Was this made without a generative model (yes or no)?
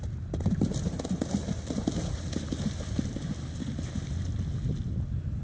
yes